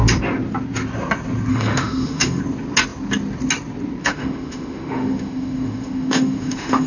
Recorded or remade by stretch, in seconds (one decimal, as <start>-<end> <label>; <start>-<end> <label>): 0.0-1.5 recorded; 1.5-2.4 remade; 2.4-4.0 recorded; 4.0-6.9 remade